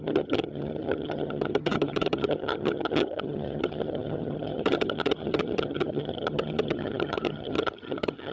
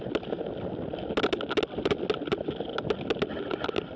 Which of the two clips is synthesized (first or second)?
first